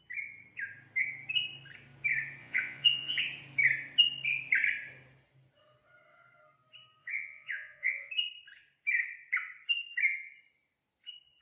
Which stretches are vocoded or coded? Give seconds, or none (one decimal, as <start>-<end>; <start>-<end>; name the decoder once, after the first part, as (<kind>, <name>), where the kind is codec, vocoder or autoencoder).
2.4-3.2 (vocoder, Vocos); 7.0-8.1

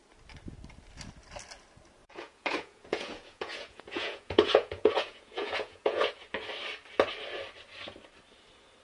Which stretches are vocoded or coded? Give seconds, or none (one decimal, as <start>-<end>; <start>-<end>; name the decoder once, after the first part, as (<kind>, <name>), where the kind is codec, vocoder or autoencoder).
2.0-6.1 (vocoder, Vocos)

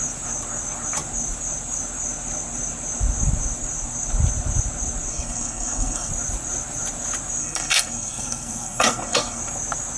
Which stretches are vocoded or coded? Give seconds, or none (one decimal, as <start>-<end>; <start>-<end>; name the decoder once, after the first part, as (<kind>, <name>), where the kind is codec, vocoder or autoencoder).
5.1-6.1 (codec, SNAC); 7.4-9.4

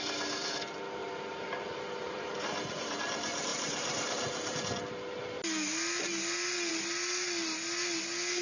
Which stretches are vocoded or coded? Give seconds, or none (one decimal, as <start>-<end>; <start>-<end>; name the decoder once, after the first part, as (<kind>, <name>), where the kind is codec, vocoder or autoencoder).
1.0-3.0 (vocoder, BigVGAN v2); 3.5-4.6